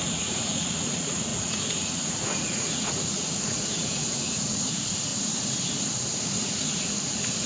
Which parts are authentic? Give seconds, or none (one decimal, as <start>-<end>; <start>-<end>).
5.1-6.2